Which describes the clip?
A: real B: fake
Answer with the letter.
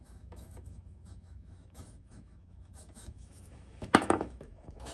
B